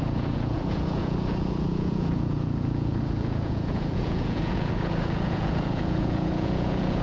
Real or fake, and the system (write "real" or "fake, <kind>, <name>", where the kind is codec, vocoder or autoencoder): fake, vocoder, Vocos